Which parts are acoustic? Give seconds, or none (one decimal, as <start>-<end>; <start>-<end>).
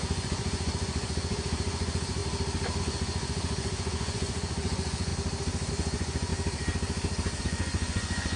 2.2-2.8; 5.1-5.7; 6.3-7.4